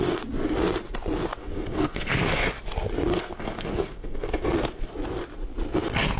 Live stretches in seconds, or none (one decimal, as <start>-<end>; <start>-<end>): 0.0-1.4; 2.5-3.1; 4.9-6.2